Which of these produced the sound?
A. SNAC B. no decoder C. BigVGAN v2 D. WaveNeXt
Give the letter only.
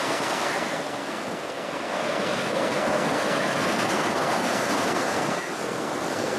A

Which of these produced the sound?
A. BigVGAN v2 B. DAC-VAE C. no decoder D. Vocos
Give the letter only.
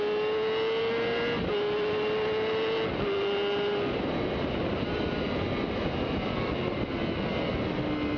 C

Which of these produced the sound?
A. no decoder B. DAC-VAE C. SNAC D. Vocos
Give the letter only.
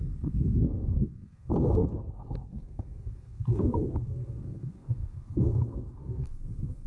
C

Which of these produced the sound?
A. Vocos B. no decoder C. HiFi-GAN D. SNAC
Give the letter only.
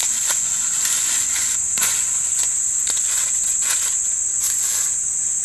A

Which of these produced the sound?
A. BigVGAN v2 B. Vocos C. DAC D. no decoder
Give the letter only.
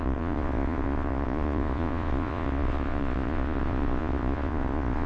B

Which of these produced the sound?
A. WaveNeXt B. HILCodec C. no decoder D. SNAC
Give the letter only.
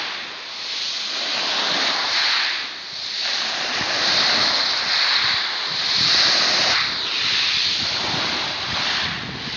C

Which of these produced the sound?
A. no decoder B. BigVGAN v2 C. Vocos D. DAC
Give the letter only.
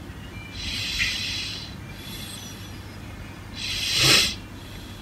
A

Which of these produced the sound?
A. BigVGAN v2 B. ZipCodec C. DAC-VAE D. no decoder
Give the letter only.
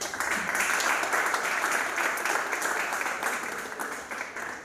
A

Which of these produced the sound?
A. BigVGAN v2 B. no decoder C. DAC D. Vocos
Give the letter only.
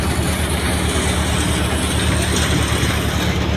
B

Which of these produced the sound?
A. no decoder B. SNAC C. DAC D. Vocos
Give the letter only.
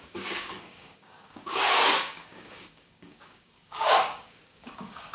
C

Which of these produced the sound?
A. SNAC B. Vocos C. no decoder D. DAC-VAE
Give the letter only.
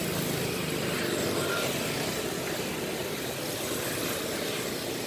C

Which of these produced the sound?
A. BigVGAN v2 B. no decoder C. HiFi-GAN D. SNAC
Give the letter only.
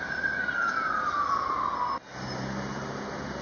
B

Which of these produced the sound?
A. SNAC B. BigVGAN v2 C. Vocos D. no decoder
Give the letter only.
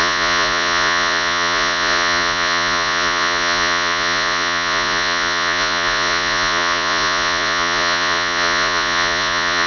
C